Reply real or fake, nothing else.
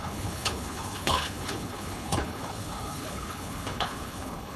fake